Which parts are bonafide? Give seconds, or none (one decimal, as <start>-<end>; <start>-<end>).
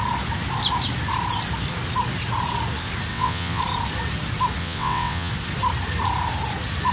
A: 0.0-3.1; 3.6-4.6; 5.3-6.9